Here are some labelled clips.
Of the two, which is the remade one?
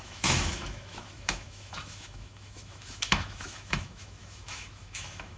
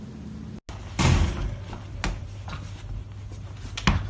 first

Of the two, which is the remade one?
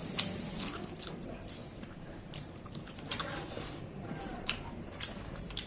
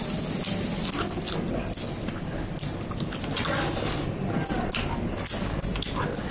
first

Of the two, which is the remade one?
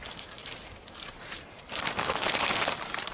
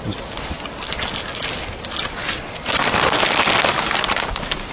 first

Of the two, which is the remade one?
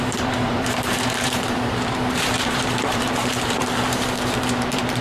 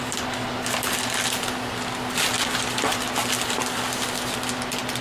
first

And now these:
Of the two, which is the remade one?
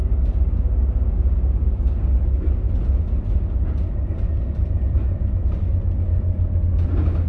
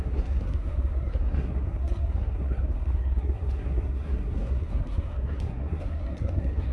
second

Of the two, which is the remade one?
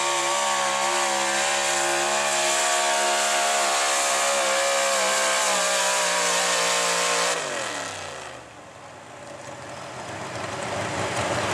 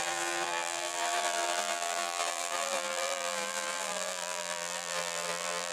second